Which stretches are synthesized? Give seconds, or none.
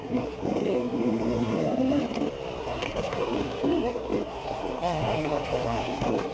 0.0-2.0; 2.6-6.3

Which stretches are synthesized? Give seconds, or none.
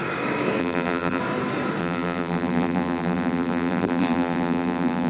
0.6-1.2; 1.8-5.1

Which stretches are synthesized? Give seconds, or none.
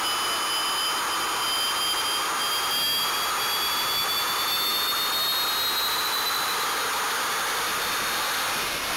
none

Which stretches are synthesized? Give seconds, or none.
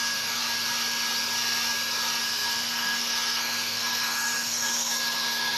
0.0-0.4; 2.2-5.6